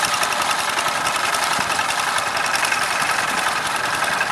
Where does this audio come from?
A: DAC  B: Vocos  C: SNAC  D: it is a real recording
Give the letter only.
D